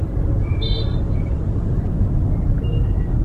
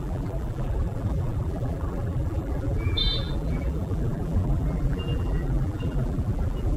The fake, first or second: second